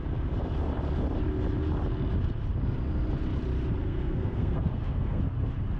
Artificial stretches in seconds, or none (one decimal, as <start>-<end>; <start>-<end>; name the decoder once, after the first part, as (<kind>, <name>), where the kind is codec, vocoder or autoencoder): 3.8-5.2 (codec, SNAC)

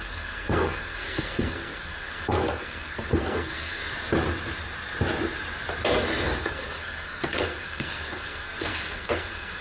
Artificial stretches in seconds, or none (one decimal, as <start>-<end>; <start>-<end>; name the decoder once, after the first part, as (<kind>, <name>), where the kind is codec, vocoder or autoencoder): 0.0-3.8 (codec, SNAC); 6.4-9.6

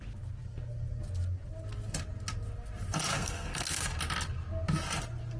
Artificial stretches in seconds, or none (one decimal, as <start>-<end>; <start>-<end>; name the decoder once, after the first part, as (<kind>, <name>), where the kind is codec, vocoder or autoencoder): 3.1-3.8 (codec, SNAC)

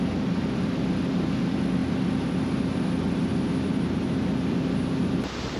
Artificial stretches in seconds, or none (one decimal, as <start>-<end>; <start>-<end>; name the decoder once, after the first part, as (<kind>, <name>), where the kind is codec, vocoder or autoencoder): none

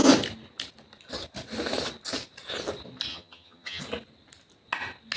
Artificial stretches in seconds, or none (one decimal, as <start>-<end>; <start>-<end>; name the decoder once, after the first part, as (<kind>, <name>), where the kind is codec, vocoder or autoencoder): 3.1-3.8 (vocoder, HiFi-GAN)

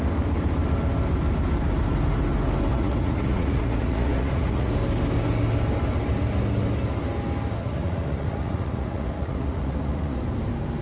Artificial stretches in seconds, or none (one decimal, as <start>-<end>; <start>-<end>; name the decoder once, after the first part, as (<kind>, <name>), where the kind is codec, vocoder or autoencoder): 2.7-4.7 (vocoder, Vocos); 7.6-10.2

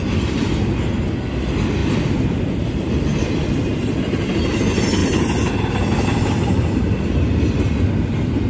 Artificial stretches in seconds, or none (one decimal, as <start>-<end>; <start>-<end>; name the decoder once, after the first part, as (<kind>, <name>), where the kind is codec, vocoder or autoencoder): 1.8-2.9 (vocoder, BigVGAN v2); 5.0-5.5